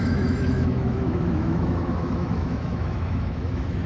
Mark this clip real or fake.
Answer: fake